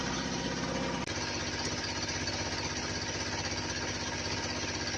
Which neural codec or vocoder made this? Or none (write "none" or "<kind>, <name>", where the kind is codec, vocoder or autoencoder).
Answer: none